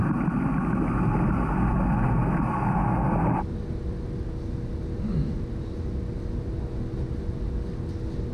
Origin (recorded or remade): recorded